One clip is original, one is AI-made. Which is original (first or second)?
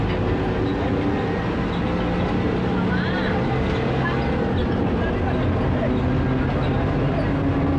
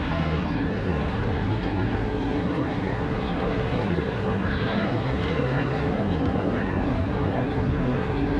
first